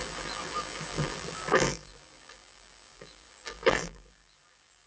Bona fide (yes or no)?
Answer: no